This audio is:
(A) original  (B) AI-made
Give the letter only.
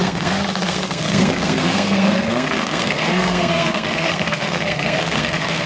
B